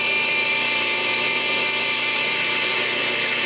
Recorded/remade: remade